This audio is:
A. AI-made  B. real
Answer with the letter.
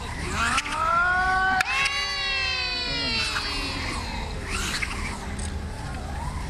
B